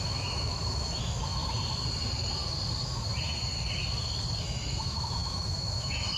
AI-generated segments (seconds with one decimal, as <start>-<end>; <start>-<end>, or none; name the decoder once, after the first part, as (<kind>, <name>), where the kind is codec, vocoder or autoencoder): 0.0-1.4 (autoencoder, DAC-VAE); 4.4-6.2